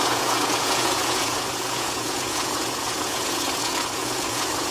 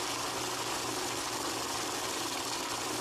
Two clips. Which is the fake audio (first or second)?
first